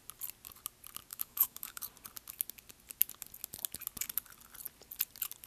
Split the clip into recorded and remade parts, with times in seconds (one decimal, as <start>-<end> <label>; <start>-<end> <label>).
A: 0.0-1.1 recorded; 1.1-1.8 remade; 1.8-5.5 recorded